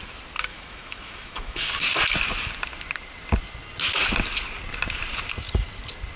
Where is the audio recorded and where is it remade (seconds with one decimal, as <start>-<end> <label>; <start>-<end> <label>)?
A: 0.0-0.5 recorded; 0.5-1.6 remade; 1.6-6.2 recorded